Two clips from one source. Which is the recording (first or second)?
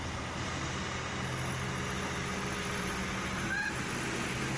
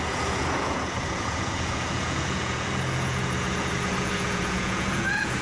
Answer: first